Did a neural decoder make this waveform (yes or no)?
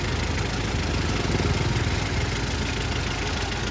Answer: no